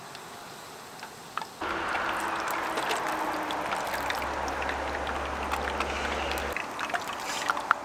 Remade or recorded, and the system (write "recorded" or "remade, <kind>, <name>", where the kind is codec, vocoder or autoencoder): recorded